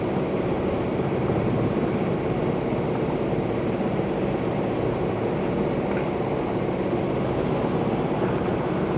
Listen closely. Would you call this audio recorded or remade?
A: recorded